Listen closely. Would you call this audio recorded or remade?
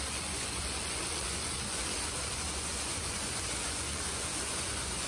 remade